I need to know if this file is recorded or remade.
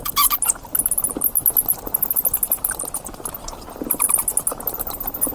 recorded